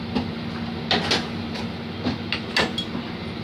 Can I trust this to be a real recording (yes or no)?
yes